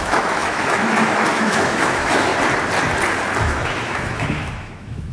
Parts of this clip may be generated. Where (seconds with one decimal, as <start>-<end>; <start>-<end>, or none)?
0.0-2.3; 3.4-5.1